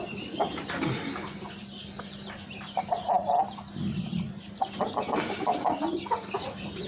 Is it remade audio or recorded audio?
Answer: recorded